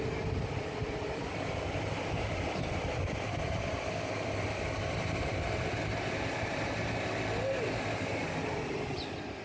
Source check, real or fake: fake